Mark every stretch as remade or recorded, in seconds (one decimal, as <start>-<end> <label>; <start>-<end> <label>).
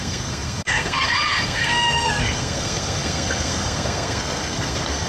0.0-5.1 remade